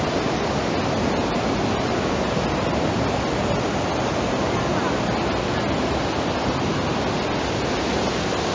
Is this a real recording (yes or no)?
yes